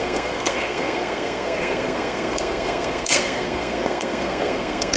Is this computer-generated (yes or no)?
yes